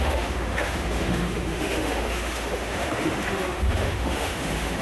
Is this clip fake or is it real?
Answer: fake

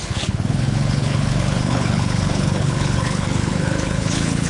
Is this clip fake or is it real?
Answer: fake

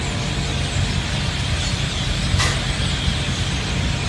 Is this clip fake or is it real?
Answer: real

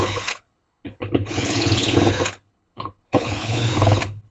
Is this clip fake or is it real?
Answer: fake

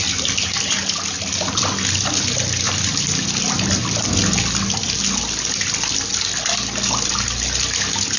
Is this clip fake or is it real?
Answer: real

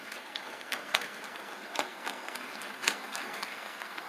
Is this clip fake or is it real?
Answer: fake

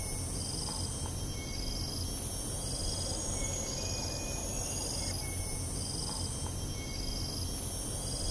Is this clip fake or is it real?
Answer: real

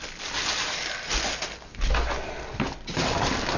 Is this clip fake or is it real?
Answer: real